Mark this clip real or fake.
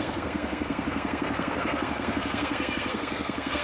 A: fake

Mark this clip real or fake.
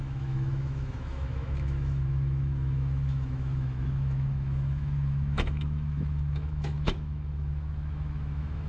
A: fake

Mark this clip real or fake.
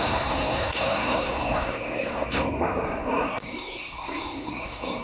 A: fake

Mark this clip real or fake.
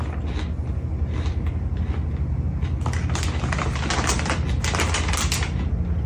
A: real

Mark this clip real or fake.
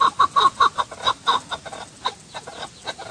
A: real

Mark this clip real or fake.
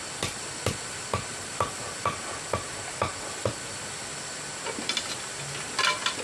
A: real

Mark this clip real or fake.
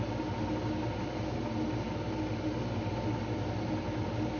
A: real